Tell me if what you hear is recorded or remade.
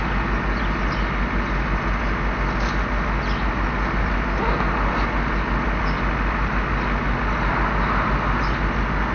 recorded